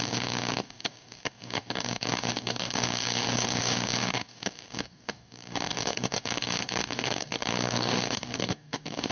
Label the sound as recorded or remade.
remade